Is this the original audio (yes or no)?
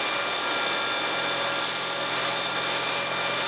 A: yes